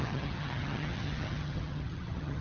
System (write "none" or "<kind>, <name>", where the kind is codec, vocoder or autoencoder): vocoder, HiFi-GAN